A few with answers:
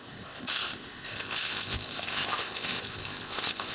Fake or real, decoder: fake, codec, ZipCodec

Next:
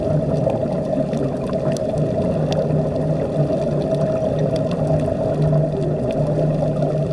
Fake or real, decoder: real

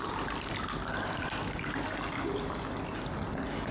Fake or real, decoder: real